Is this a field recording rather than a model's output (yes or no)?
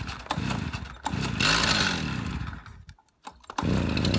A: yes